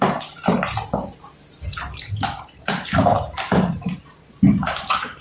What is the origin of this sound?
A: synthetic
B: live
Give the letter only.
A